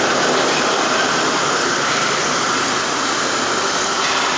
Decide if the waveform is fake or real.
real